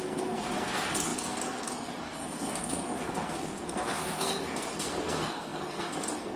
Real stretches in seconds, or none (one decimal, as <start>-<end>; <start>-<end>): none